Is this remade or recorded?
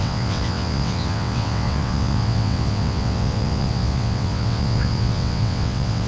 remade